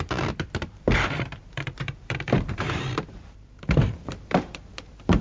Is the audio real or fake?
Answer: fake